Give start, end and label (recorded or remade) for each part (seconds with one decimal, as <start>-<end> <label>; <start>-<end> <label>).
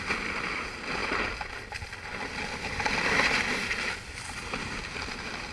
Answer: 0.0-5.5 recorded